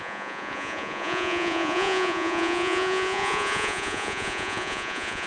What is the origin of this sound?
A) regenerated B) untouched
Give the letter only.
A